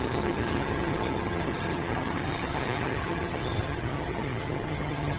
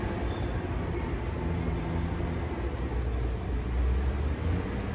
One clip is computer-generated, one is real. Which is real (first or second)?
second